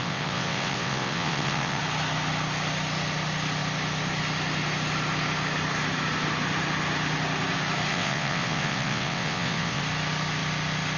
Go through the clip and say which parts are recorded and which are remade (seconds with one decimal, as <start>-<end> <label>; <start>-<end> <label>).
0.0-1.8 remade; 1.8-7.9 recorded; 7.9-9.8 remade; 9.8-11.0 recorded